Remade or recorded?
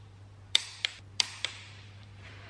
remade